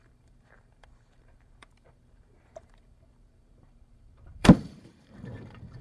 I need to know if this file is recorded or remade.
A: remade